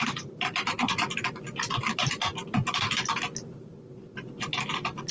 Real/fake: fake